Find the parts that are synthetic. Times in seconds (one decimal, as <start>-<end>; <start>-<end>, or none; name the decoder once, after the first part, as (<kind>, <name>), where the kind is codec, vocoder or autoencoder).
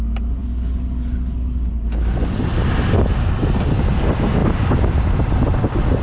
none